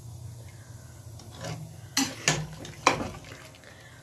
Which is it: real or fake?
real